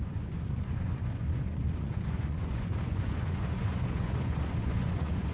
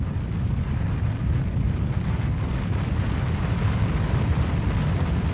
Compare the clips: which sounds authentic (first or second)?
second